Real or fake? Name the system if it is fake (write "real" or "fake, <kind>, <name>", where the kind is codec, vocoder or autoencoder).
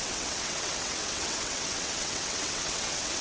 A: fake, vocoder, WaveNeXt